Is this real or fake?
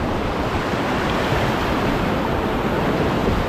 real